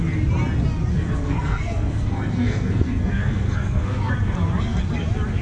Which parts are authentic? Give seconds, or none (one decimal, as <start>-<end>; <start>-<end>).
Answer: 0.0-0.9; 4.1-5.4